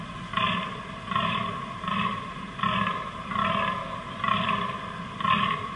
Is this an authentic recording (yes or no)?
yes